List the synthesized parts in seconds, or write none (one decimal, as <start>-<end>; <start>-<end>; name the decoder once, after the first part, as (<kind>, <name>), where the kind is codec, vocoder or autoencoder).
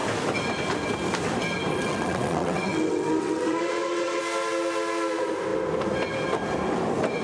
1.7-4.2 (vocoder, WaveNeXt)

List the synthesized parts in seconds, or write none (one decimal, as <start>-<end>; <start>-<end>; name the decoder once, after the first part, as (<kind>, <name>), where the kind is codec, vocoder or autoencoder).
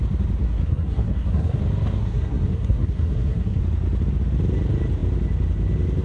0.4-1.6 (codec, SNAC); 2.0-3.6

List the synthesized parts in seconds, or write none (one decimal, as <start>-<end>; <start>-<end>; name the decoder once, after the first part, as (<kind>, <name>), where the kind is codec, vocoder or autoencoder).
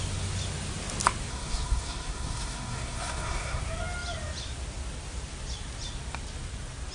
1.3-3.6 (codec, SNAC)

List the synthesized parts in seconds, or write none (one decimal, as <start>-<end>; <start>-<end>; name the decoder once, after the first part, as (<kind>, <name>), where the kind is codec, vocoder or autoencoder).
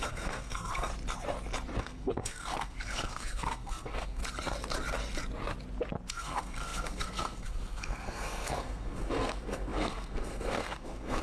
0.0-0.9 (codec, SNAC); 1.8-4.2; 6.1-11.2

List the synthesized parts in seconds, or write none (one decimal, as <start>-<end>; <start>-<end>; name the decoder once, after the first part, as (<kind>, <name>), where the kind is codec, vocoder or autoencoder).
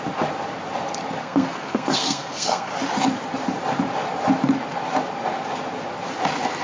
1.2-2.7 (codec, SNAC)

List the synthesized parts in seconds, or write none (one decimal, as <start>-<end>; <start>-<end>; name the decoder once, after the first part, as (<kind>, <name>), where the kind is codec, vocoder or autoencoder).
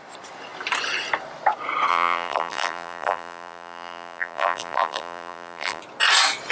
1.9-5.8 (vocoder, BigVGAN v2)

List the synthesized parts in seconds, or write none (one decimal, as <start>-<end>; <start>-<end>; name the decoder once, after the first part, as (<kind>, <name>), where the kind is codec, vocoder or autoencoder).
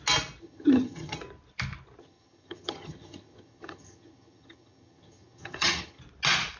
0.4-1.2 (vocoder, HiFi-GAN); 2.0-6.0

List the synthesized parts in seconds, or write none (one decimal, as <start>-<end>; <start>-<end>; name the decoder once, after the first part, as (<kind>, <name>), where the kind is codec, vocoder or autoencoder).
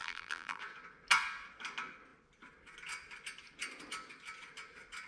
0.0-0.6 (vocoder, BigVGAN v2)